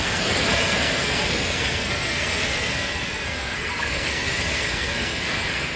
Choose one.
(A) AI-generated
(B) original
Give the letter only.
A